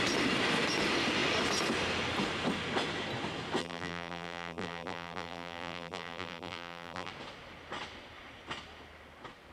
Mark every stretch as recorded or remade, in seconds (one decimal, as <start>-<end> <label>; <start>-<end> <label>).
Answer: 0.0-3.6 recorded; 3.6-7.1 remade; 7.1-9.5 recorded